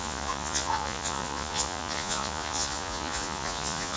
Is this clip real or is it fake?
fake